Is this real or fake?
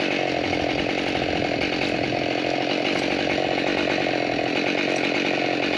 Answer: real